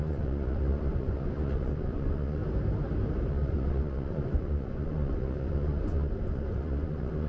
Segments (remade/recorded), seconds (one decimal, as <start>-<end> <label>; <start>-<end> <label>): 0.0-2.4 remade; 2.4-3.3 recorded; 3.3-7.3 remade